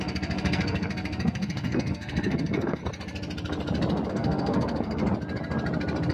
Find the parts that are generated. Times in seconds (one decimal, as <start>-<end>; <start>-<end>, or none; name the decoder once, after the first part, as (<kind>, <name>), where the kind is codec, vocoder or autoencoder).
0.0-2.8 (codec, SNAC); 4.1-5.0